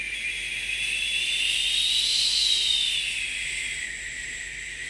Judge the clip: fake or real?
real